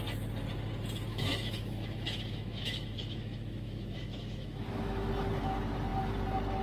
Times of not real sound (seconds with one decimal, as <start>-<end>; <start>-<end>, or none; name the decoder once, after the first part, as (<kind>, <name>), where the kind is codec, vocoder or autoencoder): 1.1-5.1 (autoencoder, DAC-VAE)

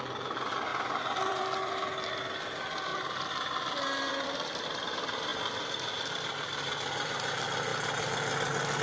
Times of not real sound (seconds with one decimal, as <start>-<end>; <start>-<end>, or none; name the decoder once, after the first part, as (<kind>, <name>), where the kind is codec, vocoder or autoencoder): 0.0-2.9 (vocoder, BigVGAN v2); 4.1-7.7